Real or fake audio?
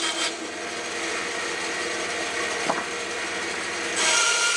real